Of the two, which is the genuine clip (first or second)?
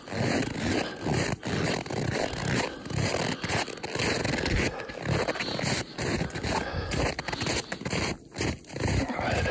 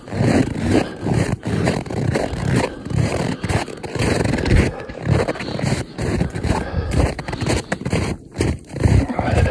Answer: first